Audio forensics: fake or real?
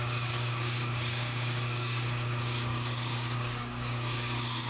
fake